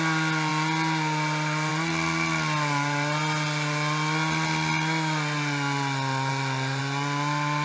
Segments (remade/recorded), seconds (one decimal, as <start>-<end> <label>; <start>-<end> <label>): 0.0-7.6 recorded